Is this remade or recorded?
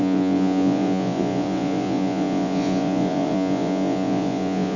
remade